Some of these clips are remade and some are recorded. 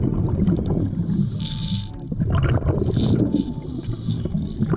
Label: recorded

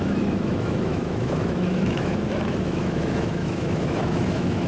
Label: remade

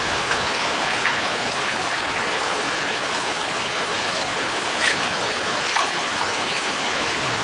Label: remade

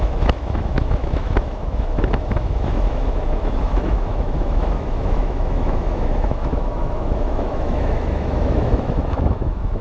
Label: remade